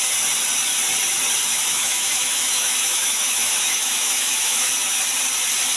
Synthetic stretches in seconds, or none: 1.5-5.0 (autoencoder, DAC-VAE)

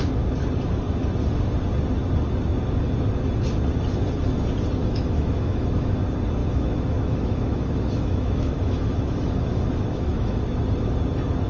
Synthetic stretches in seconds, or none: 4.8-6.0 (autoencoder, DAC-VAE); 6.4-10.4

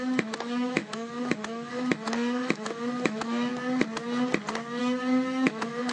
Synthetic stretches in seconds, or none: 0.0-3.5 (autoencoder, DAC-VAE); 4.8-5.9

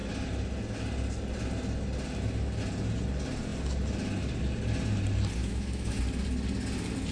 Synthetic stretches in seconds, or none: 5.4-6.0 (autoencoder, DAC-VAE)

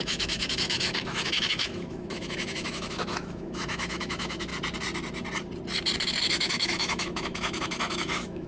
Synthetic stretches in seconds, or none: 0.0-4.5 (autoencoder, DAC-VAE); 6.2-8.5

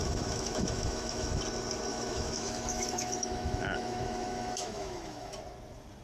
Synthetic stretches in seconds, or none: 0.0-1.4 (autoencoder, DAC-VAE); 1.9-5.4